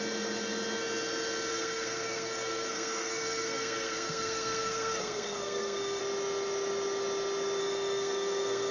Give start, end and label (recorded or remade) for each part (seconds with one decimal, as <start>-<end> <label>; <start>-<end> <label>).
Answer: 0.0-1.5 recorded; 1.5-6.0 remade; 6.0-7.6 recorded; 7.6-8.7 remade